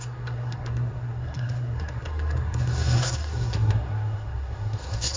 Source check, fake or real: fake